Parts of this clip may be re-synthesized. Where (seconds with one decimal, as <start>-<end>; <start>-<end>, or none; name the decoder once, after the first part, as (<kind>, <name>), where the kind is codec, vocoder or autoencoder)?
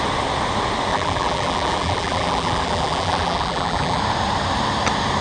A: 0.9-4.0 (vocoder, BigVGAN v2)